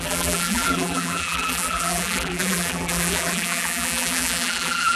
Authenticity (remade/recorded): remade